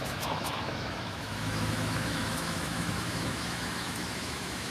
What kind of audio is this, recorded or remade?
remade